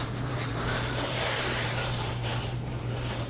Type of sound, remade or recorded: remade